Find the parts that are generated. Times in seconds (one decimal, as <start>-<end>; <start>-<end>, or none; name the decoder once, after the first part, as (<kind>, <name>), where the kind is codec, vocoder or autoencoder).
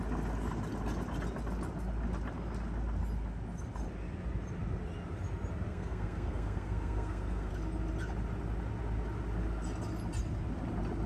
5.7-7.5 (codec, SNAC)